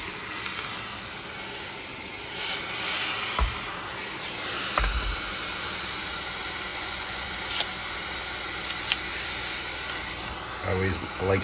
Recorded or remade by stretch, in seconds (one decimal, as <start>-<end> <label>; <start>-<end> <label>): 0.0-6.7 recorded; 6.7-7.3 remade; 7.3-11.4 recorded